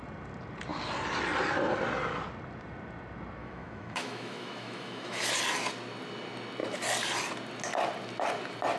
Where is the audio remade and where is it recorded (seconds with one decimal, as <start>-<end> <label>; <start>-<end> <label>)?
0.0-3.4 recorded; 3.4-5.3 remade; 5.3-8.8 recorded